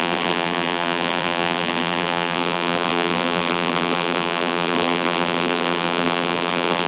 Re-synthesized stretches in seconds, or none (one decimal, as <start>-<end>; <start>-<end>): 0.0-6.9